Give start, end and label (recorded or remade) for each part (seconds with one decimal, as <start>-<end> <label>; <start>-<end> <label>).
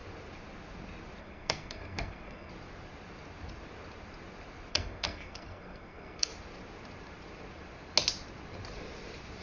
0.0-1.2 recorded; 1.2-2.5 remade; 2.5-4.7 recorded; 4.7-6.3 remade; 6.3-9.4 recorded